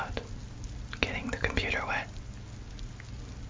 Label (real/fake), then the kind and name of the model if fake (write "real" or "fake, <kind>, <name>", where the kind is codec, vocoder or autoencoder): real